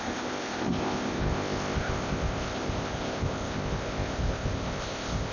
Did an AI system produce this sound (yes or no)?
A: yes